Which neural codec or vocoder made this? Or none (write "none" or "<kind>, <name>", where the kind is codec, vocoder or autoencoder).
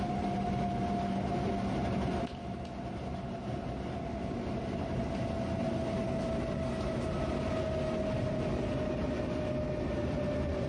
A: none